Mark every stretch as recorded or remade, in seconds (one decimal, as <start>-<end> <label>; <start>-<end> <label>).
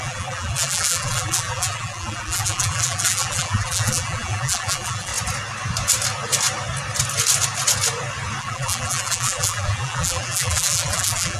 0.0-5.1 remade; 5.1-8.4 recorded; 8.4-11.4 remade